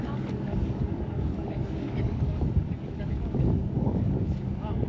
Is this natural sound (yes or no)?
no